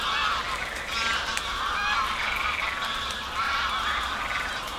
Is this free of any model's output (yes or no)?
yes